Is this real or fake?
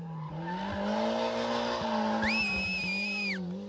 real